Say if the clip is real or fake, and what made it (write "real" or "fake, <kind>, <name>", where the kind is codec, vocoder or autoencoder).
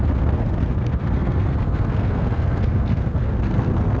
fake, codec, SNAC